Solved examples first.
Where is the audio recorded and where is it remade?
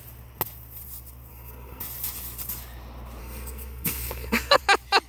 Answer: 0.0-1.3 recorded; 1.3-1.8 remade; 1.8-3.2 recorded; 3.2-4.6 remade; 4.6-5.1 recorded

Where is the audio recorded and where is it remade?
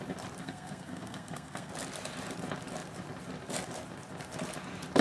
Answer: 0.0-0.4 recorded; 0.4-1.7 remade; 1.7-5.0 recorded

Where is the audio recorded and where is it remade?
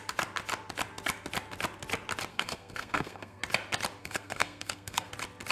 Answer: 0.0-2.3 recorded; 2.3-3.4 remade; 3.4-4.0 recorded; 4.0-5.1 remade; 5.1-5.5 recorded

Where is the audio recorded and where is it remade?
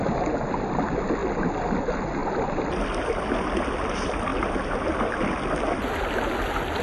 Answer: 0.0-6.8 recorded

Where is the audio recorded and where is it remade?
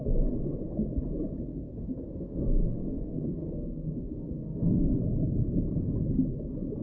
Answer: 0.0-1.5 recorded; 1.5-5.0 remade; 5.0-6.8 recorded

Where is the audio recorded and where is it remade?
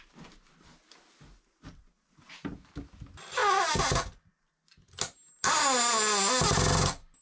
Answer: 0.0-7.2 recorded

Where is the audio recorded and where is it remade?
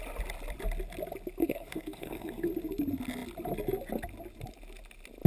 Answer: 0.0-1.4 recorded; 1.4-2.5 remade; 2.5-5.3 recorded